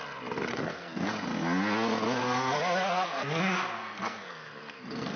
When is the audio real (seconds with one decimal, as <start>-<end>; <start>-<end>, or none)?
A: 0.0-0.5; 1.1-2.2; 3.4-3.8